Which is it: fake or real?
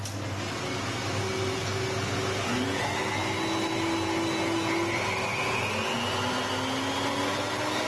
real